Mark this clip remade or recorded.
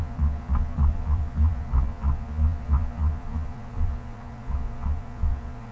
remade